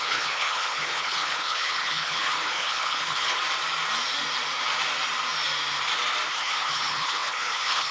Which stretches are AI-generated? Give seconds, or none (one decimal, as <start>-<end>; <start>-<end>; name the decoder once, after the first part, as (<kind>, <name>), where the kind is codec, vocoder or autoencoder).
0.0-3.4 (codec, HILCodec); 6.3-7.9